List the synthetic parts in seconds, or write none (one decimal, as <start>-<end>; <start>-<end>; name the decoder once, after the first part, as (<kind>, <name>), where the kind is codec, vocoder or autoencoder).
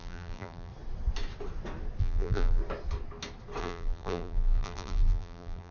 0.0-0.7 (vocoder, BigVGAN v2); 2.0-2.6; 3.6-5.7